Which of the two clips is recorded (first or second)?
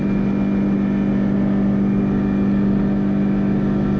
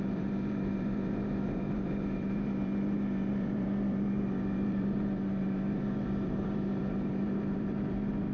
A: first